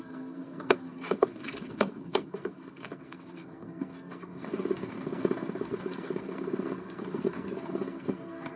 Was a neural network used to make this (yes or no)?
yes